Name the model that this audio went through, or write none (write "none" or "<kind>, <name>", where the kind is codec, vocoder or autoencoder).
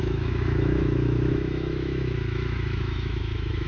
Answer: autoencoder, DAC-VAE